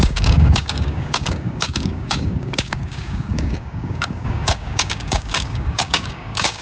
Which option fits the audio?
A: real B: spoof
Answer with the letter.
B